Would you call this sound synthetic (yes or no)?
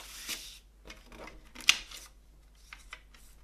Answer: no